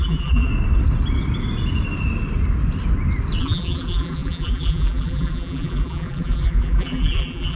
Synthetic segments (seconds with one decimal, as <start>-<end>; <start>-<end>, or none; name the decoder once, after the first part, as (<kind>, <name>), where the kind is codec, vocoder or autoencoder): 0.0-0.5 (vocoder, BigVGAN v2); 3.4-7.6